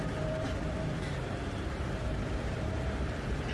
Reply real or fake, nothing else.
fake